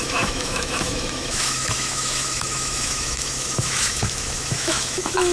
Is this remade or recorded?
remade